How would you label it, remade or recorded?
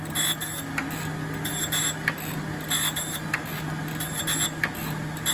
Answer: recorded